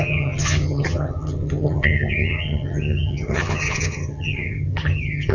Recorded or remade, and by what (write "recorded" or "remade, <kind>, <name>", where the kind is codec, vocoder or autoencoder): remade, vocoder, HiFi-GAN